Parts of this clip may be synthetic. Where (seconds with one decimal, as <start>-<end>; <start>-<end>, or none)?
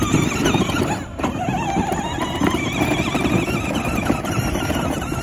none